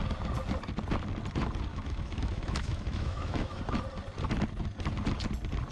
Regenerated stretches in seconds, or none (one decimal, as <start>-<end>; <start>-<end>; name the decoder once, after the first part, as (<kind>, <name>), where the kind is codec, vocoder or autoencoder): 1.7-3.6 (autoencoder, DAC-VAE)